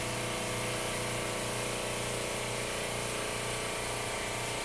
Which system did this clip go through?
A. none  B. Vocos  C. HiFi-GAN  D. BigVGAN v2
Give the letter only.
A